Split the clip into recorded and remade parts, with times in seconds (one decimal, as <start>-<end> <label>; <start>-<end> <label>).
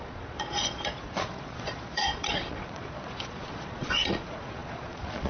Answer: 0.0-5.3 remade